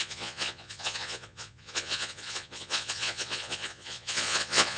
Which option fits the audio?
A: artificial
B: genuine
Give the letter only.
A